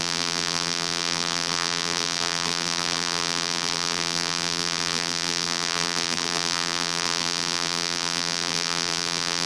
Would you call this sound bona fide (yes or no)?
no